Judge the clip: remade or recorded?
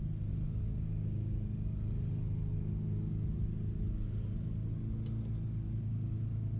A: recorded